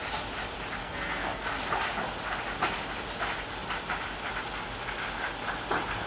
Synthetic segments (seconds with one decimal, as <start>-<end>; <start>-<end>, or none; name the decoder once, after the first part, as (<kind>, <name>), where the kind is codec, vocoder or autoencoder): 0.8-1.5 (codec, SNAC)